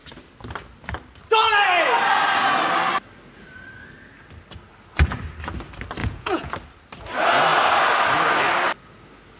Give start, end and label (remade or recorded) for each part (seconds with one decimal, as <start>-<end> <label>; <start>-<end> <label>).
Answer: 0.0-6.0 recorded; 6.0-6.5 remade; 6.5-9.4 recorded